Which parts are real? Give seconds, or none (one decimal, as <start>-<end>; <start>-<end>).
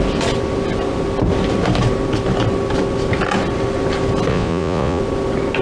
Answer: 0.0-4.3; 5.0-5.6